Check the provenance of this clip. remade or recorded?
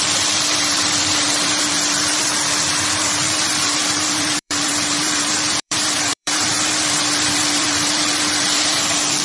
remade